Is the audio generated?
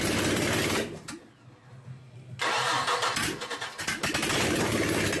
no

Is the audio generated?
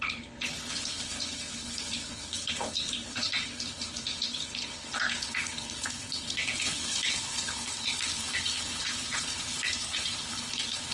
yes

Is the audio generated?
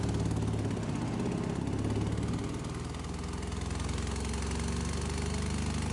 no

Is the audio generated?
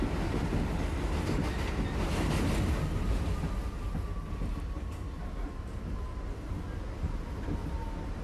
no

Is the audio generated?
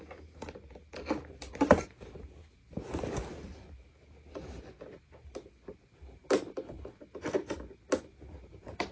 no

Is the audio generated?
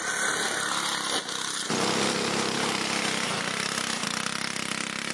no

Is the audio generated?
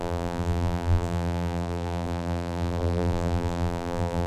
yes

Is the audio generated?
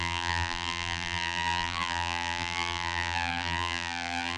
yes